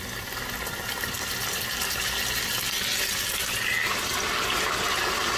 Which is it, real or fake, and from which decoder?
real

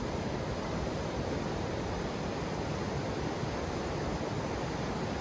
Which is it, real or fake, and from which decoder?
real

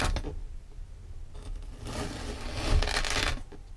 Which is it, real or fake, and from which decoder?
real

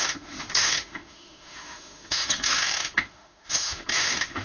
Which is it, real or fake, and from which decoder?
fake, autoencoder, DAC-VAE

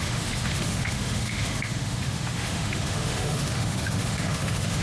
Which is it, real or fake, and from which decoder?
fake, autoencoder, DAC-VAE